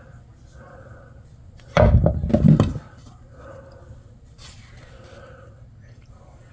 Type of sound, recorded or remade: recorded